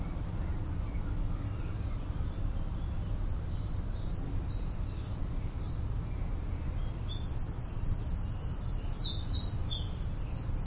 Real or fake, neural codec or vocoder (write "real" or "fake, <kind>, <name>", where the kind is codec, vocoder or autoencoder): real